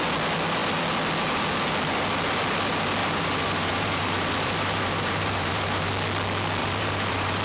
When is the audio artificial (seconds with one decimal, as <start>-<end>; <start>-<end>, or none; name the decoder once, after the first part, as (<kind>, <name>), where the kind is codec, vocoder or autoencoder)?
3.0-5.9 (vocoder, BigVGAN v2); 6.6-7.4